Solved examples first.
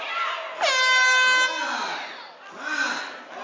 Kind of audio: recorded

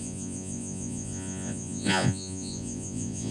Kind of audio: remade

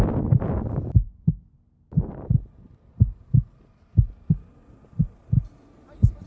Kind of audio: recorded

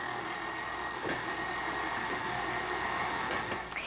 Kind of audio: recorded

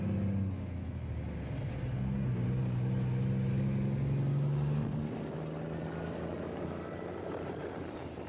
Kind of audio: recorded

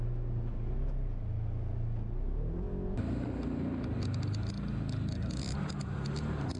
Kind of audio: recorded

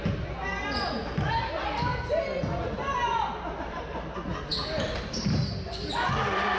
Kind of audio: recorded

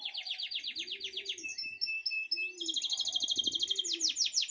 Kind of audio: recorded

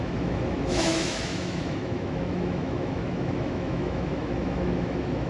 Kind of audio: remade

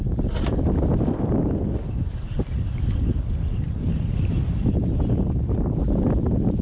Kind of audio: recorded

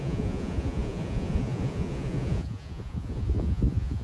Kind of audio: remade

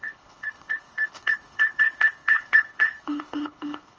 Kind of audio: remade